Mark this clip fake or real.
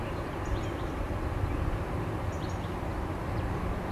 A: real